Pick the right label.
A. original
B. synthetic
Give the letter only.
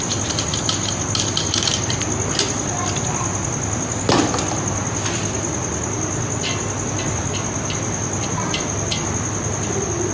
A